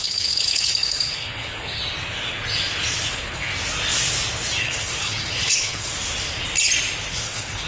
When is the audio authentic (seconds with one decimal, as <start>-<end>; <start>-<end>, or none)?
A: 1.8-3.1; 3.5-4.6; 5.9-7.1